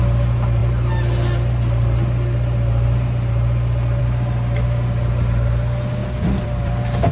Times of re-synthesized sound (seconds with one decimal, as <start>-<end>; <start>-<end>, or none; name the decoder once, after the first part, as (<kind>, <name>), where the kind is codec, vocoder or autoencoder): 6.0-7.1 (vocoder, BigVGAN v2)